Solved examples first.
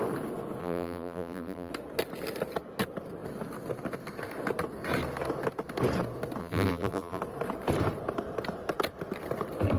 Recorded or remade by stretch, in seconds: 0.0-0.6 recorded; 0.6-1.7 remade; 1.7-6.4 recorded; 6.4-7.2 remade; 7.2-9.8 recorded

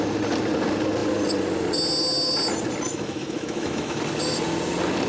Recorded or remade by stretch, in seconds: 0.0-2.9 recorded; 2.9-4.0 remade; 4.0-5.1 recorded

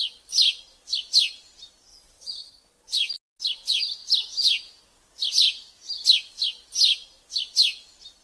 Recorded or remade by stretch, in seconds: 0.0-1.9 recorded; 1.9-2.5 remade; 2.5-8.2 recorded

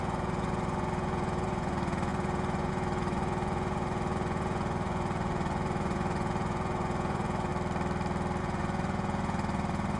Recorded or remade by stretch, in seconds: 0.0-7.5 remade; 7.5-8.4 recorded; 8.4-10.0 remade

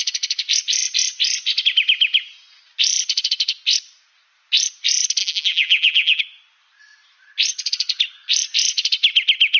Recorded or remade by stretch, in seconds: 0.0-5.2 recorded; 5.2-6.2 remade; 6.2-9.6 recorded

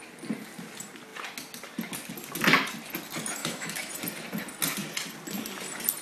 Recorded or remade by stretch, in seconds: 0.0-3.4 recorded; 3.4-3.9 remade; 3.9-6.0 recorded

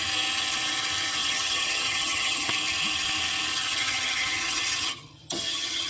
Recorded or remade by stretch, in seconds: 0.0-1.2 recorded; 1.2-2.5 remade; 2.5-3.5 recorded; 3.5-5.9 remade

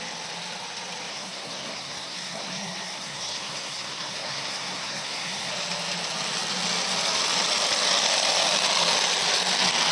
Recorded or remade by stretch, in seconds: 0.0-1.1 recorded; 1.1-5.5 remade; 5.5-9.9 recorded